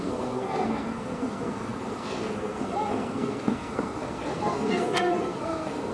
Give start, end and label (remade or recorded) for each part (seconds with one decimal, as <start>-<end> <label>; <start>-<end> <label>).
0.0-5.9 remade